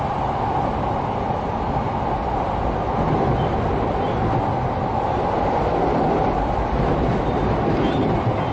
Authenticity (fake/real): real